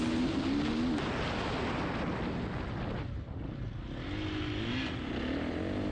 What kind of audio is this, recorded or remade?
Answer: recorded